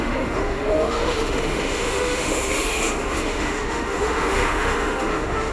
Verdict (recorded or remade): remade